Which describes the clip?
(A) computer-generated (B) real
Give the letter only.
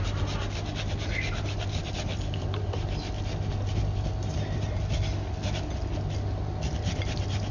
B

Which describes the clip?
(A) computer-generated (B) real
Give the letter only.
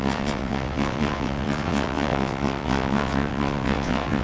A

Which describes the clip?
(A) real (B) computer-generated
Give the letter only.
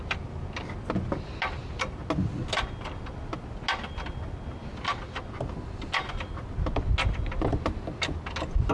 A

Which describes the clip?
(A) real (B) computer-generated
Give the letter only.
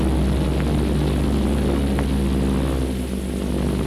A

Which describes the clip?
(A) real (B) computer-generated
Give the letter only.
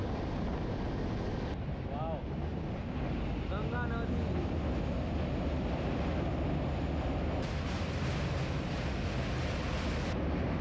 A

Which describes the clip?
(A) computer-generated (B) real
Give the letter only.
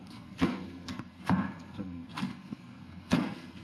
A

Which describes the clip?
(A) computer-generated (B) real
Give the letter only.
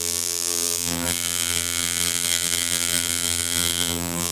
A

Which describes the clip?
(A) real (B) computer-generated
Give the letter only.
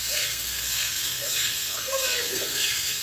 B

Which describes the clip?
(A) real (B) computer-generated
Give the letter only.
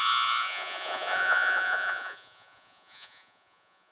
B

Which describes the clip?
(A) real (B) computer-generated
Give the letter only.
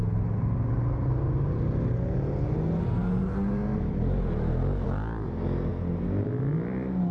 A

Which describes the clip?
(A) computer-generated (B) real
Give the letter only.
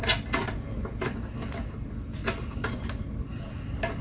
B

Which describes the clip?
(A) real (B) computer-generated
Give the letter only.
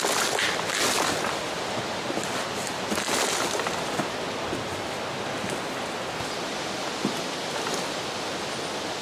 A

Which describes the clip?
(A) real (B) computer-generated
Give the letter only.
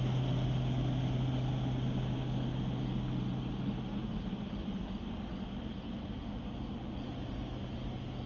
A